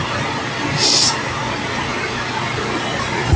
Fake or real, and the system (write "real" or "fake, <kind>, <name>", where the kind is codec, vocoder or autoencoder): real